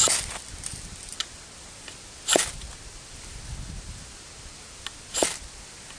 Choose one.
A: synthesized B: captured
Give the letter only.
B